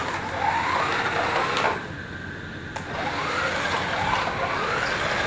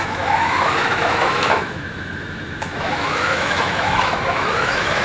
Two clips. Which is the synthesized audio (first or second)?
second